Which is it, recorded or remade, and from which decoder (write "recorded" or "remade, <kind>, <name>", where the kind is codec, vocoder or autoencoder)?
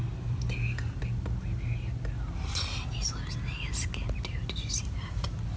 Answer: recorded